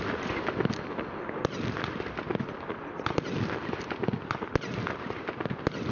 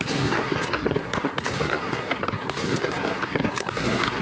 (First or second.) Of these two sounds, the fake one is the second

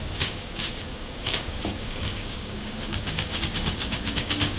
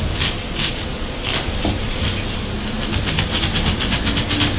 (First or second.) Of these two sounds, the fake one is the first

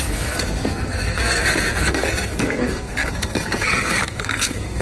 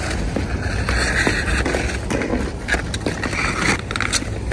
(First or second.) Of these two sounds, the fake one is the first